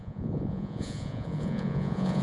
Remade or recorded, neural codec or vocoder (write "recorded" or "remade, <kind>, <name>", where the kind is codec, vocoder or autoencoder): remade, vocoder, Vocos